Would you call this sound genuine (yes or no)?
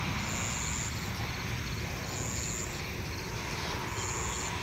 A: yes